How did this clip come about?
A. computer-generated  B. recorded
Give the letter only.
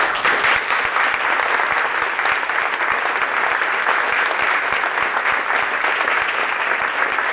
B